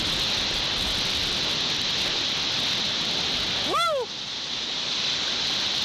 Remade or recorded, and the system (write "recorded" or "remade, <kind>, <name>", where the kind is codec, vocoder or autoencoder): recorded